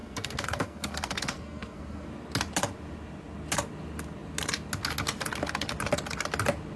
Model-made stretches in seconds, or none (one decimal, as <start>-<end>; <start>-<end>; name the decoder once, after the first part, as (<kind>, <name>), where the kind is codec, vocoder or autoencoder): 0.0-2.1 (codec, SNAC)